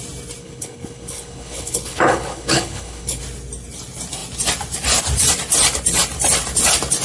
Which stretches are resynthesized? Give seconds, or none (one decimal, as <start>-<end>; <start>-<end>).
0.4-3.2